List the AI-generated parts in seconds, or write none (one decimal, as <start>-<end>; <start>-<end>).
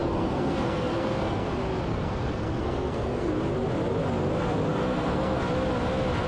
0.0-1.5; 1.9-3.3; 4.7-5.4